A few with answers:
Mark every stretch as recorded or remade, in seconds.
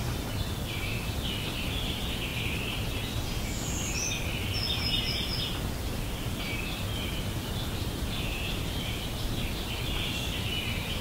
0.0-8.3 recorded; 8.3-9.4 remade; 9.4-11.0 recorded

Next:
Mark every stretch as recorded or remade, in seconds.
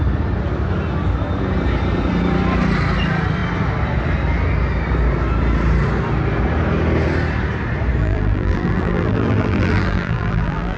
0.0-8.0 recorded; 8.0-10.8 remade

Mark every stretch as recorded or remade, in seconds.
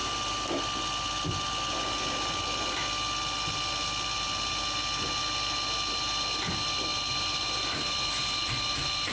0.0-9.1 recorded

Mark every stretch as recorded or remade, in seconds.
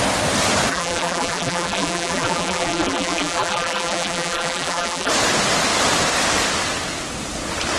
0.0-0.7 recorded; 0.7-5.1 remade; 5.1-7.8 recorded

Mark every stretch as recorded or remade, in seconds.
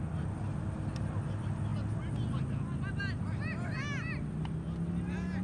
0.0-5.4 recorded